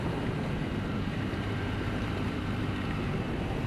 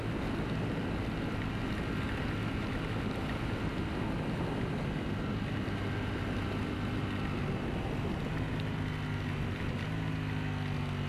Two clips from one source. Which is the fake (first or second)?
first